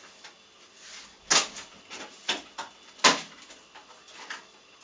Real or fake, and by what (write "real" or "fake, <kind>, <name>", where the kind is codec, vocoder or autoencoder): real